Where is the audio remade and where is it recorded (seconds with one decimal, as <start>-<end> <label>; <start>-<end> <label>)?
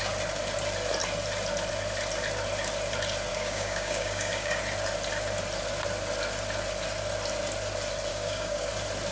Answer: 0.0-3.3 recorded; 3.3-4.6 remade; 4.6-8.1 recorded; 8.1-8.7 remade; 8.7-9.1 recorded